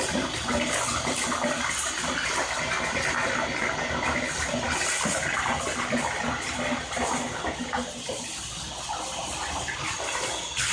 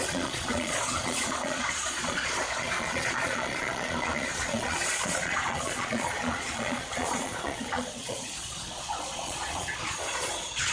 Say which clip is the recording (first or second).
first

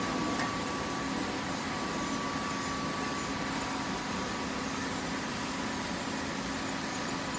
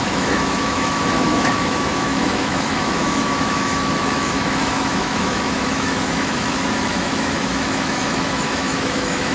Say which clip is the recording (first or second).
first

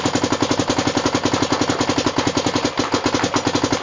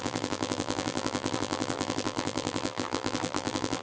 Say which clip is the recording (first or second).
first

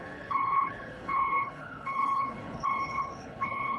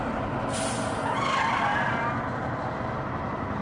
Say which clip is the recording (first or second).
second